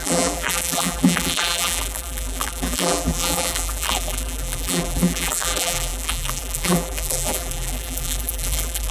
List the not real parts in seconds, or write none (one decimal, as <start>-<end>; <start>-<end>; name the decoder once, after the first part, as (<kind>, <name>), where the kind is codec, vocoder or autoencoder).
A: 0.0-8.9 (vocoder, BigVGAN v2)

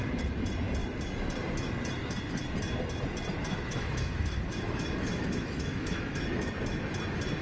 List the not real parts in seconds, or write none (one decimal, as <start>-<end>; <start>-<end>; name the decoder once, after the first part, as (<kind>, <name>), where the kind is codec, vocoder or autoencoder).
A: 3.4-6.5 (autoencoder, DAC-VAE)

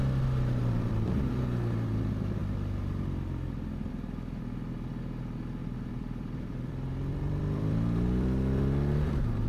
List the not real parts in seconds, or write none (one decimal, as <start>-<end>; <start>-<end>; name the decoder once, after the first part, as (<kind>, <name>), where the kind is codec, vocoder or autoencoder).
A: 0.6-1.3 (vocoder, BigVGAN v2); 5.6-9.5

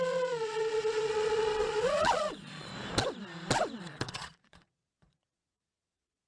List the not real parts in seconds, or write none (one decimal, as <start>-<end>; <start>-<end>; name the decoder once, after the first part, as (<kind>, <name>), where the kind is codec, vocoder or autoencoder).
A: 0.0-2.7 (vocoder, Vocos); 3.8-6.3

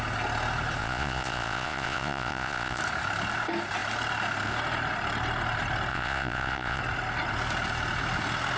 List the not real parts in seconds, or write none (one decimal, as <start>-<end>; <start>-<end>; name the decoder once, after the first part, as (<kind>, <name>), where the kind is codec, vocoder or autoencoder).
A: 0.8-2.8 (vocoder, Vocos); 5.9-6.8

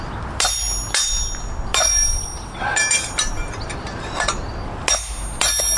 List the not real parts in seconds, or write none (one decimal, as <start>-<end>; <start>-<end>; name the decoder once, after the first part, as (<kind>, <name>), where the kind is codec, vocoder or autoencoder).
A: none

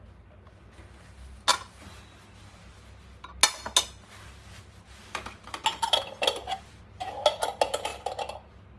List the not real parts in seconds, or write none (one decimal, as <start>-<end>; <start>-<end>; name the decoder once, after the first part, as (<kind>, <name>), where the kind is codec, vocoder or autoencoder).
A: none

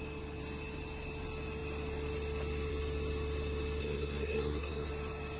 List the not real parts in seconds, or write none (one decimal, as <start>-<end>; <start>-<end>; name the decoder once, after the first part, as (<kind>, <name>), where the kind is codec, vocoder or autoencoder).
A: 3.8-4.9 (codec, SNAC)